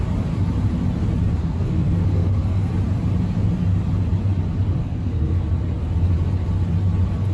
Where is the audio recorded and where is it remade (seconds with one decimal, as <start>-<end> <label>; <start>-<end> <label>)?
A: 0.0-1.4 recorded; 1.4-2.7 remade; 2.7-4.8 recorded; 4.8-5.4 remade; 5.4-7.3 recorded